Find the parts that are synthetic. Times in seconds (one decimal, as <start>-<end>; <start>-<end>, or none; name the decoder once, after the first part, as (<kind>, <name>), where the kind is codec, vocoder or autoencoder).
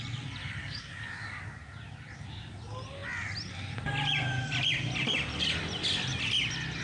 0.6-1.6 (codec, DAC)